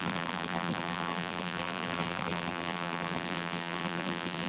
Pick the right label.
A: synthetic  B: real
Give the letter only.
A